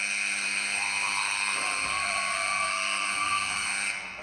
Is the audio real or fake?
fake